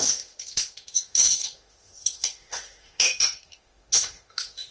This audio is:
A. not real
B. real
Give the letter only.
A